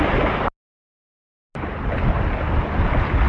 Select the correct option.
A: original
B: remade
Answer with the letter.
A